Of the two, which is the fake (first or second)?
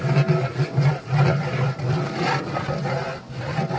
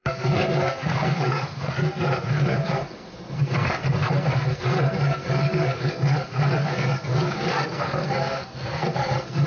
second